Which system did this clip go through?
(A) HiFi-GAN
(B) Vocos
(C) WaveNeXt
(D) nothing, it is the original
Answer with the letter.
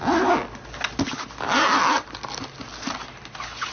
D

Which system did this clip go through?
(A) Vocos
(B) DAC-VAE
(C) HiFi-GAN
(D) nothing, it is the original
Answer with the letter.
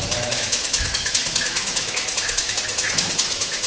B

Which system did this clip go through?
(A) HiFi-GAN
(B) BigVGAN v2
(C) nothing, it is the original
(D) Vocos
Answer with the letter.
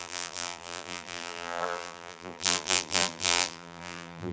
B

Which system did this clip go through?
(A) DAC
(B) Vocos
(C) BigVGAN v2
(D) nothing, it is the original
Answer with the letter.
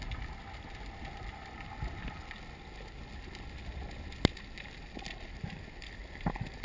D